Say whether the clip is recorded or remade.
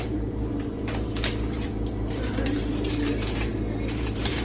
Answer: remade